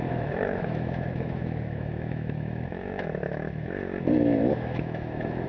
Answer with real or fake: fake